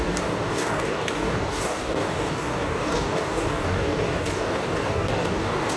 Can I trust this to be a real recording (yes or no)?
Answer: no